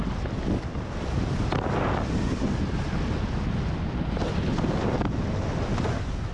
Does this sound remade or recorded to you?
recorded